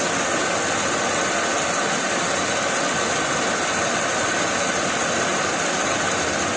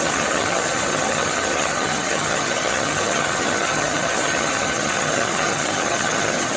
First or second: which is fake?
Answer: second